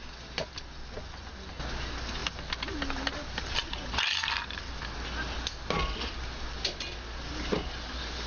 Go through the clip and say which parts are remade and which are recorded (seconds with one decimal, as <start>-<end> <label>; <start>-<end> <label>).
0.0-8.3 recorded